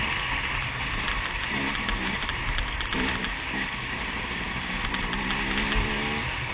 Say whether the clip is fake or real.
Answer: real